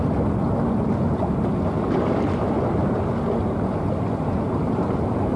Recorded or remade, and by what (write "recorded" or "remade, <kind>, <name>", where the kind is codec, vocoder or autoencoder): recorded